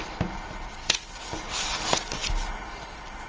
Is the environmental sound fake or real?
real